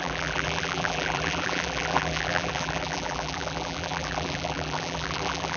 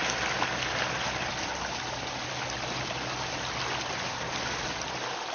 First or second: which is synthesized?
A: first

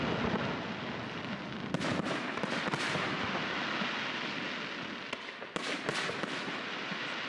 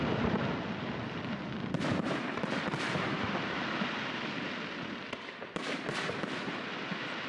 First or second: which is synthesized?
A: second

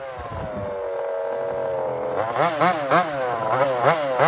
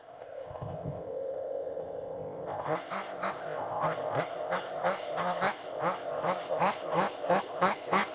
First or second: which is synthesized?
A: second